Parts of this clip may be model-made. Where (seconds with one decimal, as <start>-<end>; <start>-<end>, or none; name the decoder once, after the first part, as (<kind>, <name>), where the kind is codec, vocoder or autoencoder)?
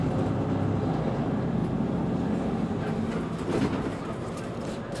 none